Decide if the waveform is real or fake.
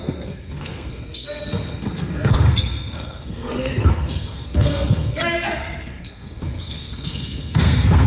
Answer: fake